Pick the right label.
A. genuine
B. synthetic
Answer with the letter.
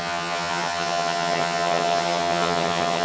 B